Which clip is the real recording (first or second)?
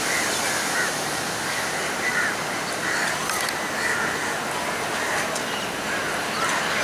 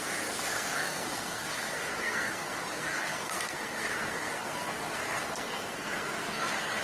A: first